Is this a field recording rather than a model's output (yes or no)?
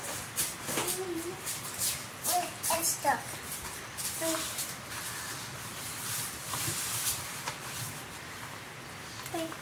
no